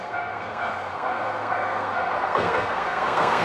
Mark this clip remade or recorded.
remade